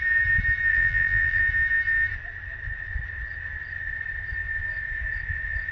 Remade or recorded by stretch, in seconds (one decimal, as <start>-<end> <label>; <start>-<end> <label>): 0.0-0.7 recorded; 0.7-1.4 remade; 1.4-5.7 recorded